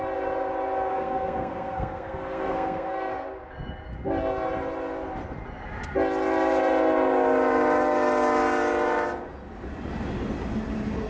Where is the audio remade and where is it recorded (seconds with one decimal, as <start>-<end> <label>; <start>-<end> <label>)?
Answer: 0.0-0.9 recorded; 0.9-3.1 remade; 3.1-11.1 recorded